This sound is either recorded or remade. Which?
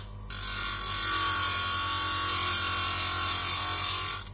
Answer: recorded